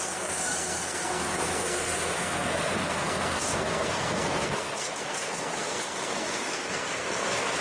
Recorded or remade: remade